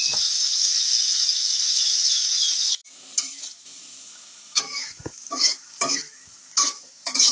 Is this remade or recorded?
remade